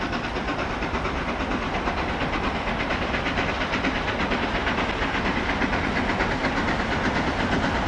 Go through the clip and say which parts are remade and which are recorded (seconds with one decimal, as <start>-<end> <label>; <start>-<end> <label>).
0.0-7.9 recorded